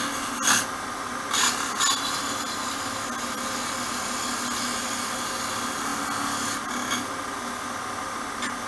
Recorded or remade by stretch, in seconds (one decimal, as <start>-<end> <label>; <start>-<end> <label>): 0.0-8.7 recorded

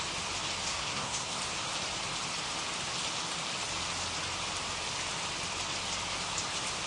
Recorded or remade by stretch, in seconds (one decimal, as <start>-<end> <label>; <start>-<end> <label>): 0.0-0.7 recorded; 0.7-1.4 remade; 1.4-6.9 recorded

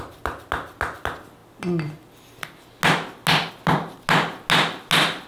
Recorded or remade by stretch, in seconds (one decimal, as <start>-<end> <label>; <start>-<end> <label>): 0.0-5.3 recorded

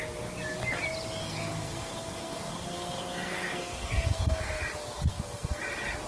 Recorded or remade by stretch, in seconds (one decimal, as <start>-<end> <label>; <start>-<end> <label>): 0.0-1.2 recorded; 1.2-4.6 remade; 4.6-5.1 recorded; 5.1-5.6 remade; 5.6-6.1 recorded

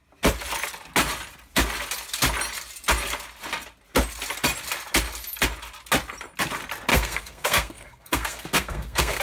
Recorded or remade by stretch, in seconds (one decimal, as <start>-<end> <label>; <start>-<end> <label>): 0.0-6.9 recorded; 6.9-9.2 remade

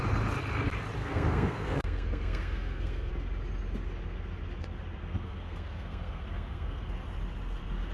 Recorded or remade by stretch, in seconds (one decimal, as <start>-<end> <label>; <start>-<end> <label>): 0.0-1.0 recorded; 1.0-3.1 remade; 3.1-5.0 recorded; 5.0-6.9 remade; 6.9-7.9 recorded

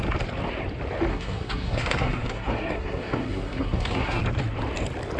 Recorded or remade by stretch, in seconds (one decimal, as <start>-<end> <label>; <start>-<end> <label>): 0.0-1.1 recorded; 1.1-4.2 remade; 4.2-5.2 recorded

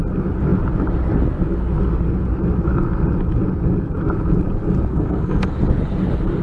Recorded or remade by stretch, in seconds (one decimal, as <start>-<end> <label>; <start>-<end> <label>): 0.0-4.9 recorded; 4.9-5.5 remade; 5.5-6.4 recorded